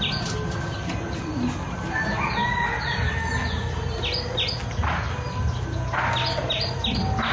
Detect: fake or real real